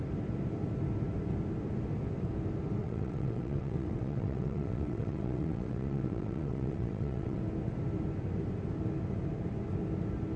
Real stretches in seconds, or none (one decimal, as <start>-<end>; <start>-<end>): 0.0-2.8; 7.4-10.4

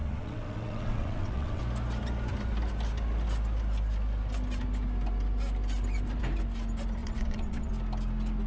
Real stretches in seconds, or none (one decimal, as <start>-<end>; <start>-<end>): 1.6-7.0; 7.7-8.5

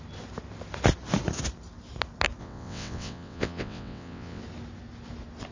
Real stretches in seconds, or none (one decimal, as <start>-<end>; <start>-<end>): 0.0-2.4; 4.4-5.5

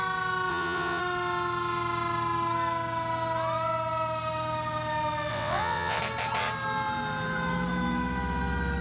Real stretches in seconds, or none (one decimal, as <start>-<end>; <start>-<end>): 0.0-0.5; 1.0-5.3; 6.0-8.8

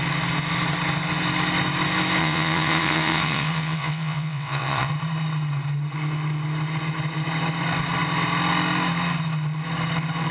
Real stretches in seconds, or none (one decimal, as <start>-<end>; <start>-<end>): 0.0-2.2; 4.9-10.3

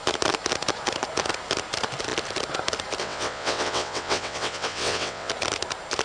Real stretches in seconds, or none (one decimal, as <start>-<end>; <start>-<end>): 0.0-3.0; 5.3-6.0

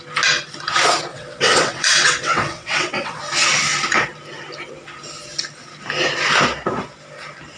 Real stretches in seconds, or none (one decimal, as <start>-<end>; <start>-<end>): 0.0-1.1; 3.2-7.6